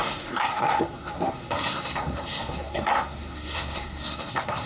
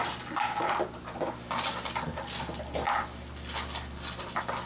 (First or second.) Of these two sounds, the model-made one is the first